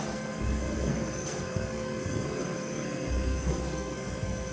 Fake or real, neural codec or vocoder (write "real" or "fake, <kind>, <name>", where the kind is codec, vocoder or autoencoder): fake, codec, SNAC